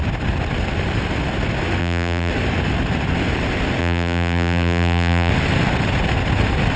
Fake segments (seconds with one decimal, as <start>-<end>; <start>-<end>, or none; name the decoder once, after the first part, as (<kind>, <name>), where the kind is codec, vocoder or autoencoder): 1.8-2.3 (vocoder, BigVGAN v2); 3.8-5.3